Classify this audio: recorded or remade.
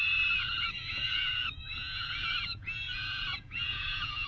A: remade